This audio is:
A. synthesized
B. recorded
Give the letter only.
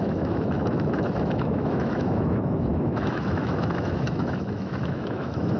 A